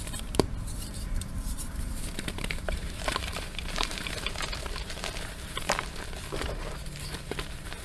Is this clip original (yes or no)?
no